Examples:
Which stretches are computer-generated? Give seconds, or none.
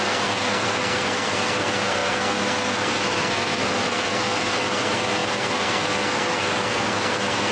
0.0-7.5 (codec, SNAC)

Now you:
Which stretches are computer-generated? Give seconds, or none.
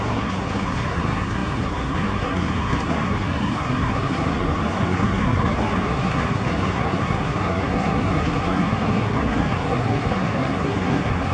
0.0-11.3 (codec, SNAC)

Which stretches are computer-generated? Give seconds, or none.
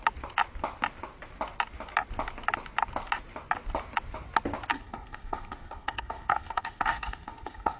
4.7-7.8 (codec, SNAC)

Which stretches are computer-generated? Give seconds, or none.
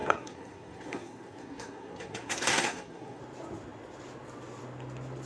0.0-3.2 (codec, SNAC)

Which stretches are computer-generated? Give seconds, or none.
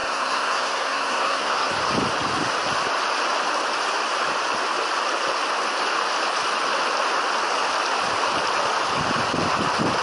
0.0-1.7 (codec, SNAC)